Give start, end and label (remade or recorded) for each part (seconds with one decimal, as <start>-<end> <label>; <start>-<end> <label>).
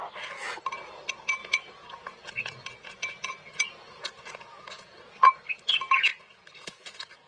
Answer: 0.0-1.4 recorded; 1.4-5.3 remade; 5.3-6.1 recorded; 6.1-7.3 remade